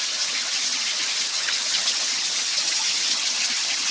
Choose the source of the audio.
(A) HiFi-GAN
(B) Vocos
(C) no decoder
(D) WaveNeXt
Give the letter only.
A